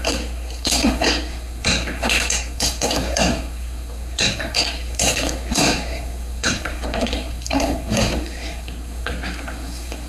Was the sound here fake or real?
fake